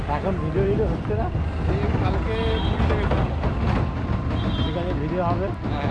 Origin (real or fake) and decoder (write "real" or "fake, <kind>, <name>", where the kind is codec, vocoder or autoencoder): real